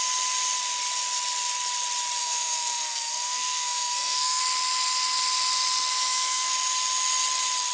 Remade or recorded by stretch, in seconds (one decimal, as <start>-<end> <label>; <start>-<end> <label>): 0.0-2.2 recorded; 2.2-4.4 remade; 4.4-5.9 recorded; 5.9-6.5 remade; 6.5-7.7 recorded